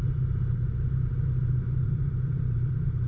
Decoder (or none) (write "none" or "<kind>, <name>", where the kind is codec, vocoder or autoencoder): vocoder, BigVGAN v2